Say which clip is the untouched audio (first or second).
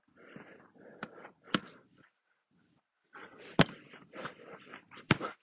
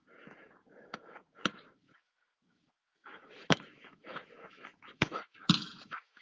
first